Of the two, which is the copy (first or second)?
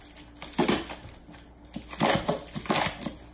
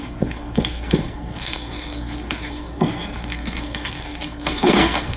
second